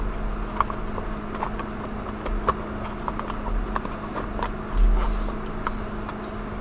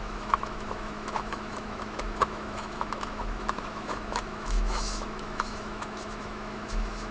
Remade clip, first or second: second